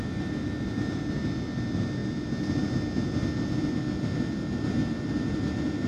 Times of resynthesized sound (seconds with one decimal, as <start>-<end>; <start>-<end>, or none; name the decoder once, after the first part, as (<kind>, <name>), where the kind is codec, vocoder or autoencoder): none